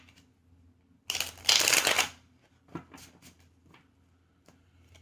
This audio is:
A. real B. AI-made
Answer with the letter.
A